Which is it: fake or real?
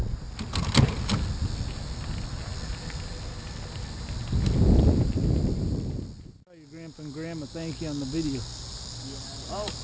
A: real